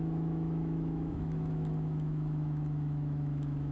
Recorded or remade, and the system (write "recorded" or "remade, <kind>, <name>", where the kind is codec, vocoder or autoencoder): remade, autoencoder, DAC-VAE